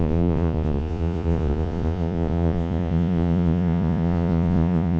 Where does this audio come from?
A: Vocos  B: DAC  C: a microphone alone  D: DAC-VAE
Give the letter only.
A